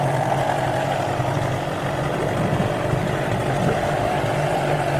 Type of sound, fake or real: real